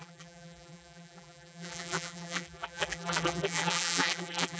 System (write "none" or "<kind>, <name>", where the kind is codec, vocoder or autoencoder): vocoder, BigVGAN v2